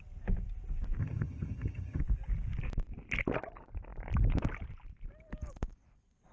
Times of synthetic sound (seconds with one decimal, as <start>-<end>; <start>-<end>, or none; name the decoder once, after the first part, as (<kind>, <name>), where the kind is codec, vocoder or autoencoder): 1.0-2.0 (vocoder, HiFi-GAN)